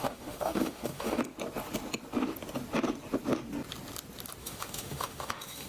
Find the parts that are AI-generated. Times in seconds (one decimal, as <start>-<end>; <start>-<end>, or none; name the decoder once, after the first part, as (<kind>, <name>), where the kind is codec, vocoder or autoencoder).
0.0-1.2 (autoencoder, DAC-VAE); 4.4-5.7